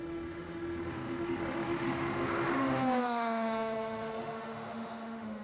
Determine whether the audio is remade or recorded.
remade